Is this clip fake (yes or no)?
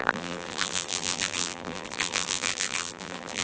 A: yes